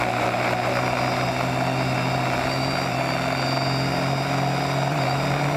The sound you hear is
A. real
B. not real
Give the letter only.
A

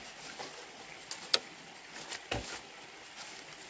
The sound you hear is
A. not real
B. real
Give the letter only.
B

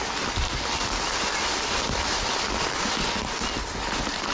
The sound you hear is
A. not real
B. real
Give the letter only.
B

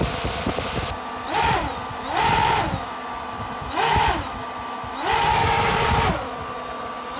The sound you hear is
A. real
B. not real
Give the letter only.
A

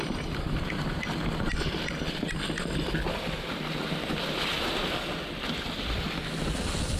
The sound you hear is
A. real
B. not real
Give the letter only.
A